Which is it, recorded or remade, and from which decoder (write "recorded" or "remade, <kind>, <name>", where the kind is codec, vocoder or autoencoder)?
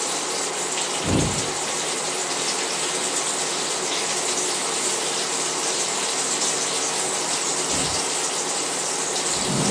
recorded